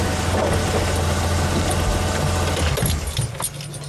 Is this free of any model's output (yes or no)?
yes